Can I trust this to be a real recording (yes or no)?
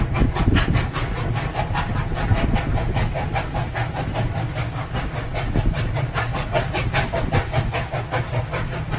yes